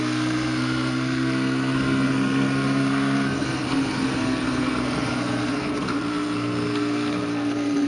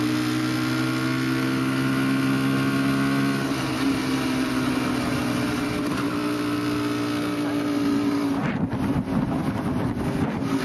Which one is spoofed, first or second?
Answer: first